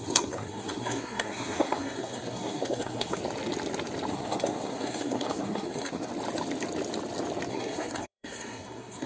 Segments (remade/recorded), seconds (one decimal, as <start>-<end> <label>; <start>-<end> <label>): 0.0-3.2 remade; 3.2-4.1 recorded; 4.1-6.1 remade; 6.1-7.5 recorded; 7.5-9.1 remade